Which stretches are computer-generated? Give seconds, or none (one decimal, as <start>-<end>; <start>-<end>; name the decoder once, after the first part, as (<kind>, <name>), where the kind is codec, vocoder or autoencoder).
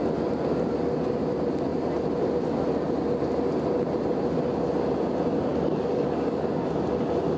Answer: 5.5-6.6 (codec, DAC)